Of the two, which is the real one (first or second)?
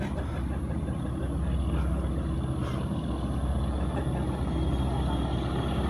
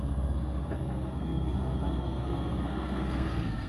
first